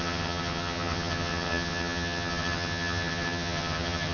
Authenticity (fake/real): fake